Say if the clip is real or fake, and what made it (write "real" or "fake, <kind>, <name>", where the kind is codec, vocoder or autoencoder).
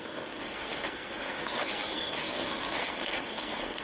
fake, codec, SNAC